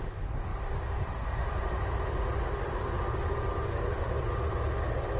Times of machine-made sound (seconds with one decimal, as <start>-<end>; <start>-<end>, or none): 0.5-3.3